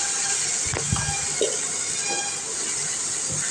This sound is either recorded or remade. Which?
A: recorded